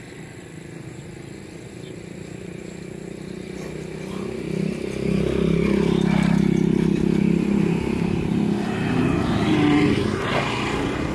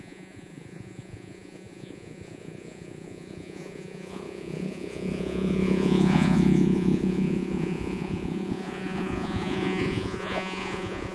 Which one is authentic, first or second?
first